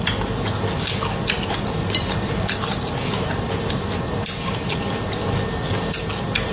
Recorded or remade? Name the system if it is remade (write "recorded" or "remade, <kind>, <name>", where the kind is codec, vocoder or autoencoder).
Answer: recorded